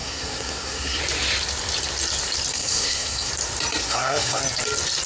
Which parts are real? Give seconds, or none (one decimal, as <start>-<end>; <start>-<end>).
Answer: 1.0-2.5; 3.3-3.8; 4.4-5.1